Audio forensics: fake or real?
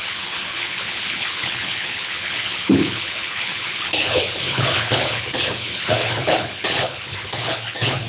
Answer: fake